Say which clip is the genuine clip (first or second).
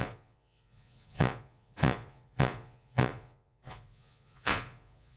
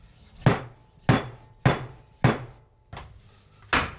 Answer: second